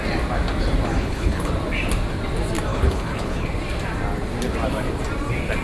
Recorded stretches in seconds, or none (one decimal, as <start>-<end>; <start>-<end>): 0.0-0.9; 1.5-2.7; 3.5-5.6